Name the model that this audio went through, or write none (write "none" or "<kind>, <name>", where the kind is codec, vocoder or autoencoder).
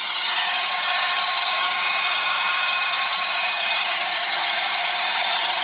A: vocoder, HiFi-GAN